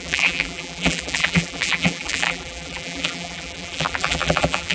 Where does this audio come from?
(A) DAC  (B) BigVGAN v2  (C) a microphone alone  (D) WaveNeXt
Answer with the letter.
B